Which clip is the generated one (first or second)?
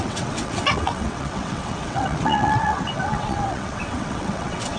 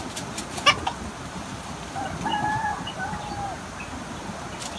first